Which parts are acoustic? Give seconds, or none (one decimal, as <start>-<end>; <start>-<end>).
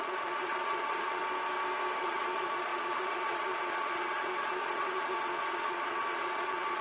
1.2-2.0